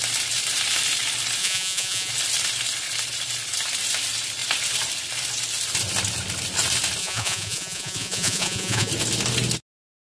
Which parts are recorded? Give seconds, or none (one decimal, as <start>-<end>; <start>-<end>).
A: 0.0-1.4; 2.1-7.0; 8.9-10.1